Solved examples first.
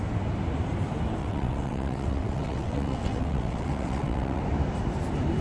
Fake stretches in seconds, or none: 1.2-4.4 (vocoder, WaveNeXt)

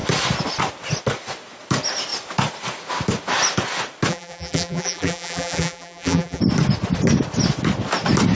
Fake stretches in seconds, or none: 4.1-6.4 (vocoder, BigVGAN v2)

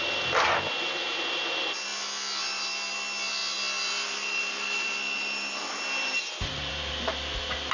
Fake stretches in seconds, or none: none